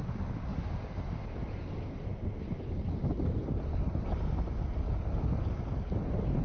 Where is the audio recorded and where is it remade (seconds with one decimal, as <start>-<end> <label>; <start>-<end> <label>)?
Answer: 0.0-6.4 recorded